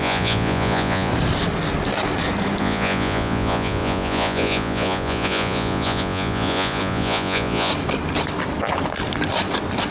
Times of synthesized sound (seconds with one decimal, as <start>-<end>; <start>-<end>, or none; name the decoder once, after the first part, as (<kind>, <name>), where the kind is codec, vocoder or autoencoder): 0.0-1.1 (vocoder, Vocos); 2.6-7.7